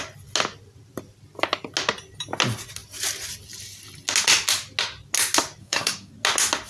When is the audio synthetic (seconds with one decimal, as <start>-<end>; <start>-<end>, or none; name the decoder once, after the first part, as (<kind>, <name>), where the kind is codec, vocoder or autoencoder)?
5.6-6.1 (codec, SNAC)